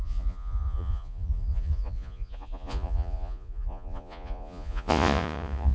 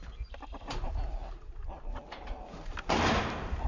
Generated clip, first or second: first